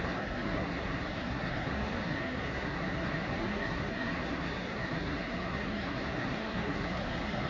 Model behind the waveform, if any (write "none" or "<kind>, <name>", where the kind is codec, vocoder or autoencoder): codec, SNAC